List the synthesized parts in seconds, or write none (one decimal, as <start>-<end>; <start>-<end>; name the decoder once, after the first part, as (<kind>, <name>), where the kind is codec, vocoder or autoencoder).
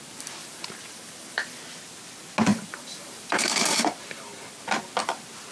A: 0.4-1.6 (vocoder, BigVGAN v2); 2.5-3.4